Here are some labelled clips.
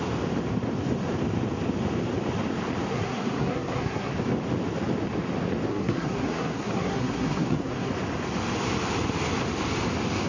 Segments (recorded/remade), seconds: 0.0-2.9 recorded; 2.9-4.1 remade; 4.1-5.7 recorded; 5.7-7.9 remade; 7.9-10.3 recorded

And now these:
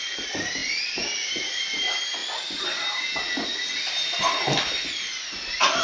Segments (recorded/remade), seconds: 0.0-5.8 recorded